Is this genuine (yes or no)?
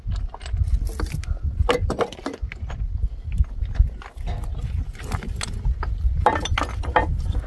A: yes